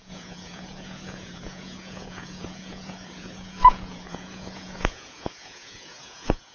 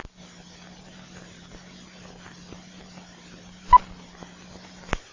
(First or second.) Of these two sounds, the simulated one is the first